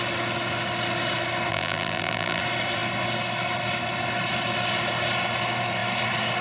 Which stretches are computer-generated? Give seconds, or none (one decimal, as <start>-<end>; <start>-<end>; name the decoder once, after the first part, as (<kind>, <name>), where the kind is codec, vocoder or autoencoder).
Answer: 1.5-2.4 (vocoder, BigVGAN v2)